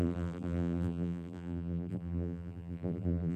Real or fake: fake